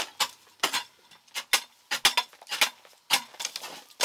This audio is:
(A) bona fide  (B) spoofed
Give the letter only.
A